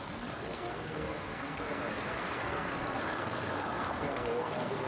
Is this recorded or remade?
remade